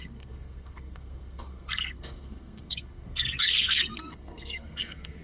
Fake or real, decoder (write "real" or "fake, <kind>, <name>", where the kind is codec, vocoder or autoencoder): fake, codec, SNAC